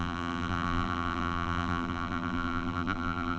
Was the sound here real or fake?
fake